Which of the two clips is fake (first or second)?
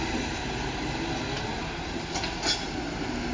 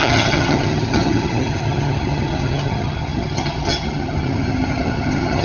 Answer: second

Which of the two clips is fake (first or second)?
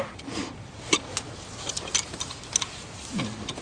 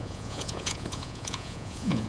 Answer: second